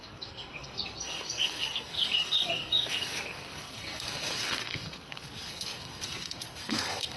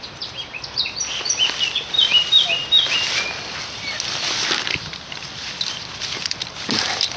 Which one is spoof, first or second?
first